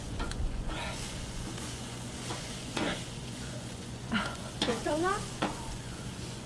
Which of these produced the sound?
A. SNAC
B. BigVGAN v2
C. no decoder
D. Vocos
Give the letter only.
D